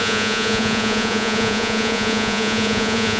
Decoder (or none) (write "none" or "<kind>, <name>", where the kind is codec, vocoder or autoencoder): vocoder, Vocos